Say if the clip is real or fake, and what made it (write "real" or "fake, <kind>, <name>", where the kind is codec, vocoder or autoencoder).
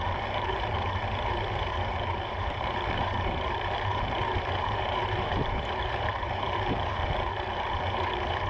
fake, vocoder, BigVGAN v2